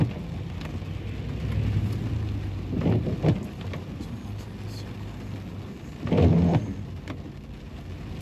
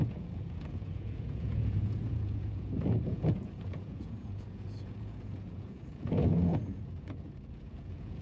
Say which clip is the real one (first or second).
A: first